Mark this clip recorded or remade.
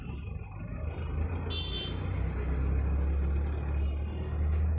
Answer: recorded